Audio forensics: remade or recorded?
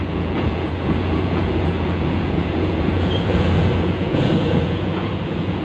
remade